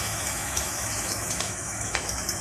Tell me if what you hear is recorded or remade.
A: remade